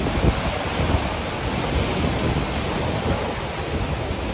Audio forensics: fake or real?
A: real